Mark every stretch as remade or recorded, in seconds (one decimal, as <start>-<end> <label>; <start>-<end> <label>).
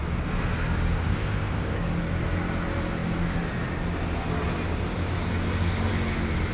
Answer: 0.0-1.0 recorded; 1.0-1.8 remade; 1.8-6.5 recorded